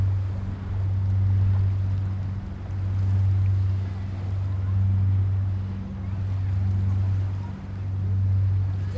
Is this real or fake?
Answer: real